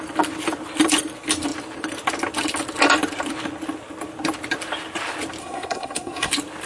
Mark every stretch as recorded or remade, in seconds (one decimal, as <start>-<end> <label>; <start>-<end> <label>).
0.0-5.4 recorded; 5.4-6.3 remade; 6.3-6.7 recorded